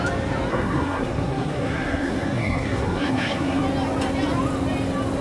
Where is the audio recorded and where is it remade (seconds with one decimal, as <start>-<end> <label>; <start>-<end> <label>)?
0.0-0.5 recorded; 0.5-3.6 remade; 3.6-5.2 recorded